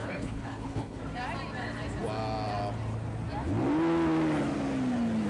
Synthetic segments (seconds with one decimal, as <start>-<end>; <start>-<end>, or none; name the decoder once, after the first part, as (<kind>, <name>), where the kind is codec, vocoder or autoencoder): 0.0-1.0 (codec, HILCodec)